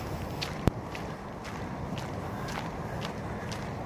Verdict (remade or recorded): remade